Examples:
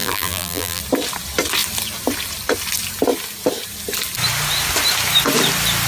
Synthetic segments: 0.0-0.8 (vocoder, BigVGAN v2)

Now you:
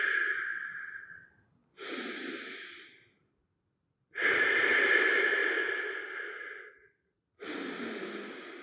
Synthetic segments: 1.6-4.6 (vocoder, BigVGAN v2)

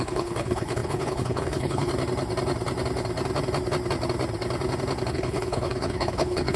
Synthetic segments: 0.0-1.9 (codec, HILCodec); 5.1-6.6

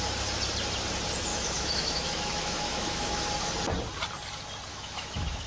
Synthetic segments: 1.3-3.3 (autoencoder, DAC-VAE); 4.7-5.5